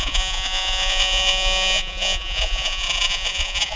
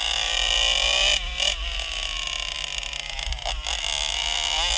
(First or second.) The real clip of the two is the second